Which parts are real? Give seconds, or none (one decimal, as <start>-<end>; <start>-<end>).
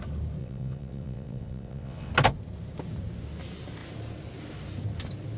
0.0-0.4; 2.1-5.4